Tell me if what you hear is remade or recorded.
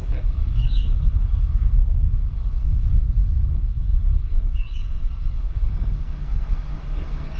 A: remade